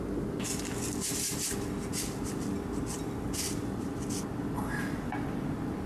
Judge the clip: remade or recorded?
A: recorded